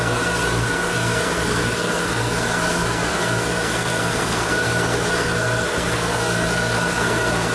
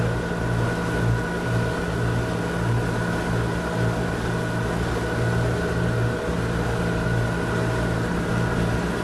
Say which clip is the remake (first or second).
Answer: first